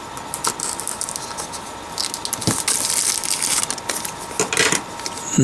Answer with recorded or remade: recorded